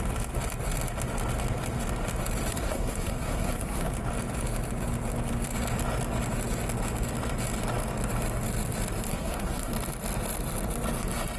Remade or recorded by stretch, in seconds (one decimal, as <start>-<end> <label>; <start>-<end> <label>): 0.0-2.5 recorded; 2.5-3.9 remade; 3.9-9.1 recorded; 9.1-9.7 remade; 9.7-11.4 recorded